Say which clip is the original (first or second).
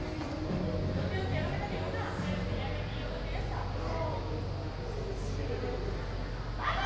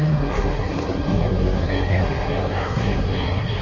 first